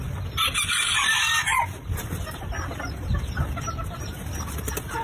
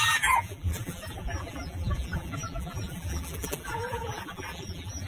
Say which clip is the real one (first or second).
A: first